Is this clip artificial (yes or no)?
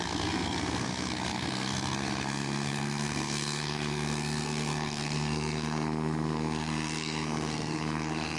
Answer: yes